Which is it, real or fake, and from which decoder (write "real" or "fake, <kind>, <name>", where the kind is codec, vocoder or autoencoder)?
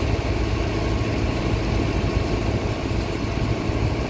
real